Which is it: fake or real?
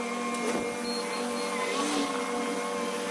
real